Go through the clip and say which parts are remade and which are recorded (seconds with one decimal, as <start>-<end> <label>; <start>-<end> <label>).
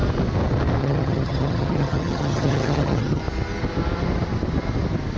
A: 0.0-0.8 recorded; 0.8-3.2 remade; 3.2-5.2 recorded